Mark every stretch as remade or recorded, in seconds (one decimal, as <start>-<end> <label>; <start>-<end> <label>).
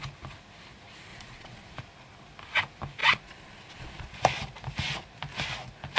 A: 0.0-1.1 recorded; 1.1-1.8 remade; 1.8-3.0 recorded; 3.0-4.1 remade; 4.1-6.0 recorded